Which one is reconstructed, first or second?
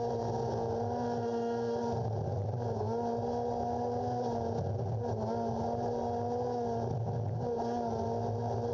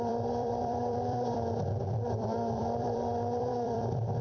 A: second